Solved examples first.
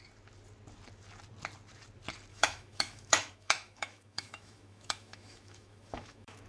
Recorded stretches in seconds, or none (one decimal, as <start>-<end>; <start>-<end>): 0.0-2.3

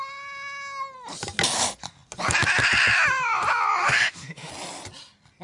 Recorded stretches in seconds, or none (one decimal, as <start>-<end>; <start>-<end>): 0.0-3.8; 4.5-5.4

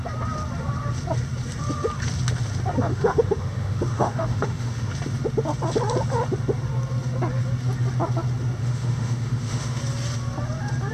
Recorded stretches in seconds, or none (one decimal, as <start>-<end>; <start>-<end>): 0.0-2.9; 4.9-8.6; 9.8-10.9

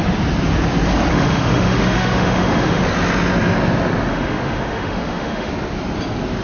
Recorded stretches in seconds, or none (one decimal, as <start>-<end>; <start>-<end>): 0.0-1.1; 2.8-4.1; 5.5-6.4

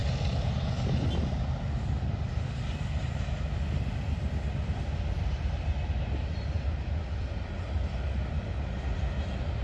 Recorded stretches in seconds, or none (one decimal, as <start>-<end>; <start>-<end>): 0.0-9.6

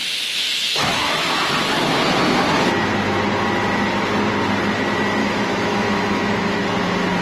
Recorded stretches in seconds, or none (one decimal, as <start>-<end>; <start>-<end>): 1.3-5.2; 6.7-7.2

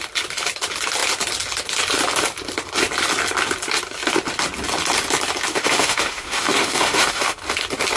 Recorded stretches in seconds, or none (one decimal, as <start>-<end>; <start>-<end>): 0.0-5.5; 7.4-8.0